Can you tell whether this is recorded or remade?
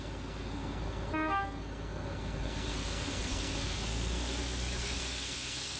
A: remade